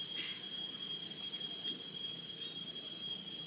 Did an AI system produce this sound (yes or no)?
no